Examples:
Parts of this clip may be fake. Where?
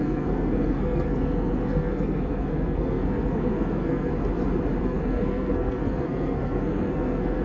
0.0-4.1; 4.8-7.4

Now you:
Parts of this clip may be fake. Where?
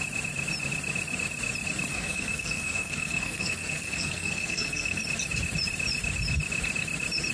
1.9-5.0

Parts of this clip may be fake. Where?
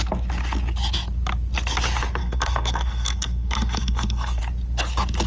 2.2-4.4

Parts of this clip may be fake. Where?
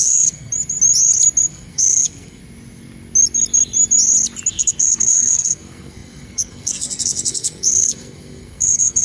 0.0-0.5; 1.5-2.4; 4.5-9.0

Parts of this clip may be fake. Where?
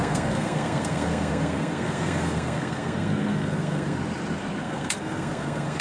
0.0-4.0; 4.6-5.8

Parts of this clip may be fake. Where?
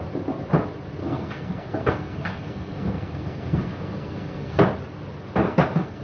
1.0-4.6; 5.4-6.0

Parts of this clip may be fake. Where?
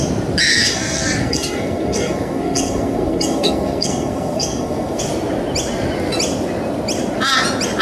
0.5-5.0